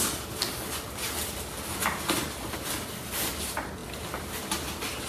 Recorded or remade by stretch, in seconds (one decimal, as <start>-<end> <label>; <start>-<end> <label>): 0.0-5.1 recorded